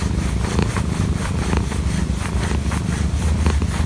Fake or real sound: fake